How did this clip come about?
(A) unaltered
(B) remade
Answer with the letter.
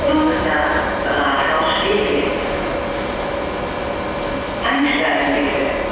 A